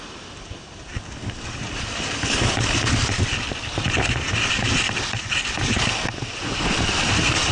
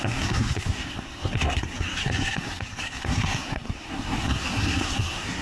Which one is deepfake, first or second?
second